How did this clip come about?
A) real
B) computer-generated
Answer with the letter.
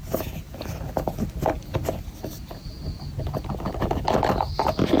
A